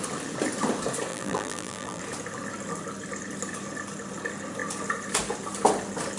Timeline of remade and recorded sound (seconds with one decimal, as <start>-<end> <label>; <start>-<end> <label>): 0.0-1.1 recorded; 1.1-2.0 remade; 2.0-6.2 recorded